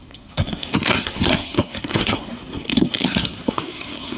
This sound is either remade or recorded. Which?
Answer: remade